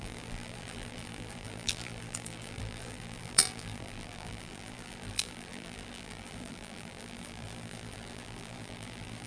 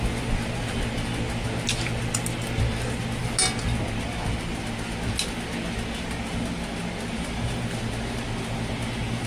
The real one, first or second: second